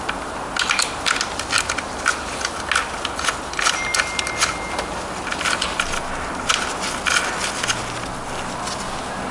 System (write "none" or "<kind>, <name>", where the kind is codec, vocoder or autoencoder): none